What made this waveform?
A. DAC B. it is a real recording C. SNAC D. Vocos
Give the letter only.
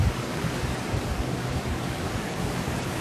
A